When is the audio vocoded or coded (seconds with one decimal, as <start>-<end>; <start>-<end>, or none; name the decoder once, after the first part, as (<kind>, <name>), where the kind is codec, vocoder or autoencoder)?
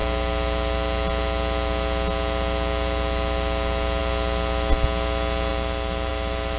none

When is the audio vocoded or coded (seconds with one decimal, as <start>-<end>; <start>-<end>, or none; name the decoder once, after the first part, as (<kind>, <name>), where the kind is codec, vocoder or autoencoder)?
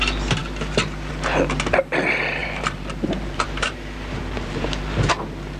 2.4-5.1 (vocoder, BigVGAN v2)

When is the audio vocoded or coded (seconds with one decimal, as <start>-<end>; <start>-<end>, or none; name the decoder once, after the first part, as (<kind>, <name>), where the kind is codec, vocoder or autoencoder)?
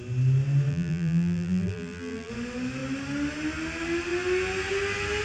0.7-2.3 (vocoder, BigVGAN v2)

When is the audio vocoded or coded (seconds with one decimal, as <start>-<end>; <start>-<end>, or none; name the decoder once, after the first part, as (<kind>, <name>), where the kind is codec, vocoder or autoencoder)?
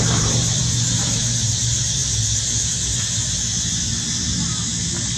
0.0-2.0 (vocoder, BigVGAN v2)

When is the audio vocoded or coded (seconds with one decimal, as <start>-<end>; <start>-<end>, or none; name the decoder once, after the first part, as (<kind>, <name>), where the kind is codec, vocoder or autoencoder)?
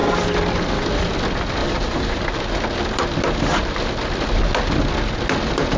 1.6-2.3 (vocoder, BigVGAN v2)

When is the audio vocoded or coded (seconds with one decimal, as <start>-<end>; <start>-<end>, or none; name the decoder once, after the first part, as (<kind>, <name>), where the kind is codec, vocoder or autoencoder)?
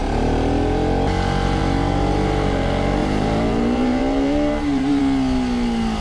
3.0-5.0 (vocoder, BigVGAN v2)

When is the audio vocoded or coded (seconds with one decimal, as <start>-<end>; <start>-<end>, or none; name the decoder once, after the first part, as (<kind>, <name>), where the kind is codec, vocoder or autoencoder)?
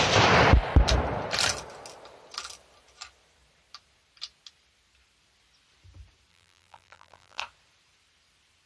6.3-7.4 (vocoder, BigVGAN v2)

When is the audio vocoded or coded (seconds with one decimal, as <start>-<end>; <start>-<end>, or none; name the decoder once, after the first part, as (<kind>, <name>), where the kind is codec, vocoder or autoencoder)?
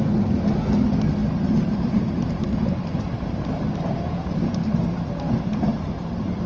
1.2-2.8 (vocoder, BigVGAN v2); 5.7-6.5